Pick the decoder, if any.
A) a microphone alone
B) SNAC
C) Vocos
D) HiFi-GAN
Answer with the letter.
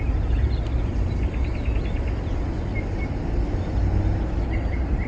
A